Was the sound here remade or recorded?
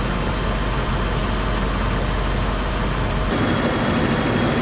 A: recorded